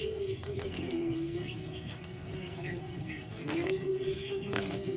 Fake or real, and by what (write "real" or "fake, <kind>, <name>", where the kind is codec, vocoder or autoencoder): fake, codec, SNAC